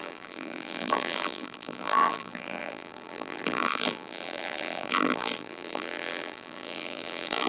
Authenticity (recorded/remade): remade